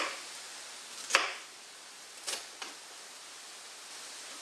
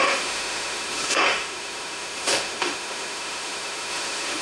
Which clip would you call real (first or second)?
first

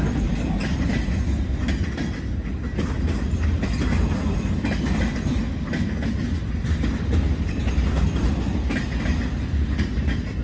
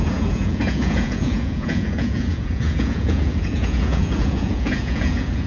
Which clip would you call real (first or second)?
first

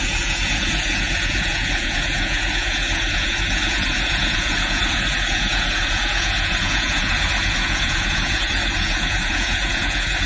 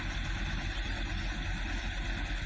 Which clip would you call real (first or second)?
second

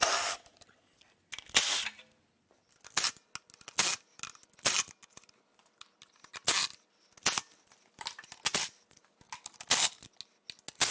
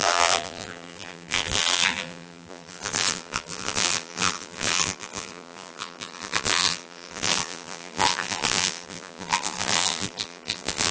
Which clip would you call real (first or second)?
first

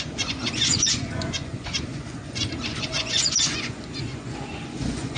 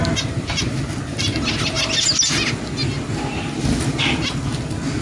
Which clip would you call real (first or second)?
second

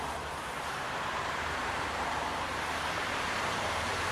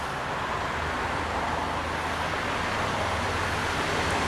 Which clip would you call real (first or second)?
second